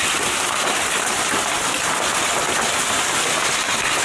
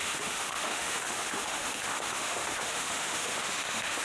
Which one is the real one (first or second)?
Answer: first